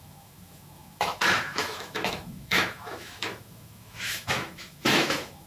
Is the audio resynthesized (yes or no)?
yes